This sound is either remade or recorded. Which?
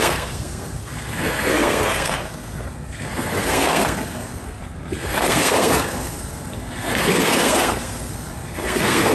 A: remade